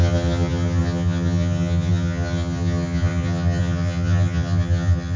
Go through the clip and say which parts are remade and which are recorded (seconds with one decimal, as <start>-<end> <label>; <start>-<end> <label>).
0.0-5.2 remade